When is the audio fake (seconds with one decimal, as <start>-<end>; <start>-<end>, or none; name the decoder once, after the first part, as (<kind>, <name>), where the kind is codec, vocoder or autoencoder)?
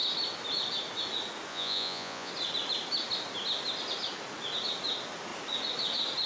1.5-2.3 (vocoder, Vocos)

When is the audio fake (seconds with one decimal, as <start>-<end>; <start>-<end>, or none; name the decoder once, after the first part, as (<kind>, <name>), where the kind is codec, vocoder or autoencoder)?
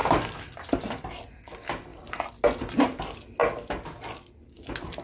none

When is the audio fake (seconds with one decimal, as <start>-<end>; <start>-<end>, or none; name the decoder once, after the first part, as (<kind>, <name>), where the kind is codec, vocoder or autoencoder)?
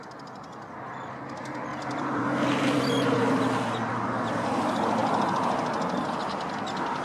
1.7-3.2 (vocoder, BigVGAN v2); 5.0-7.0